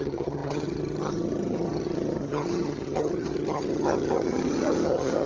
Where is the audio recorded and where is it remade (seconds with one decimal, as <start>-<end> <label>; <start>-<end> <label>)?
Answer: 0.0-5.3 remade